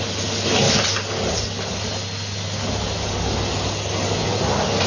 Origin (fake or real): real